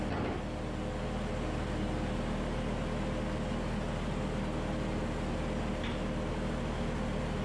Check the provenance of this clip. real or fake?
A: real